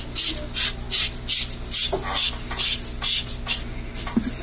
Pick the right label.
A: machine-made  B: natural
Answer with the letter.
B